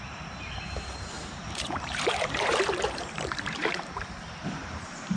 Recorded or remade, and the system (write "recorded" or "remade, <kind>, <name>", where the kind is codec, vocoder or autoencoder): remade, vocoder, BigVGAN v2